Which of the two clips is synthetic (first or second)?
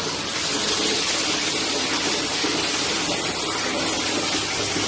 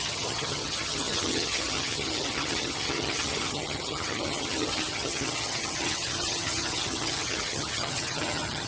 second